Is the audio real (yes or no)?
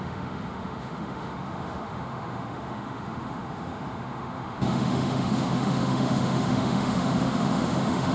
no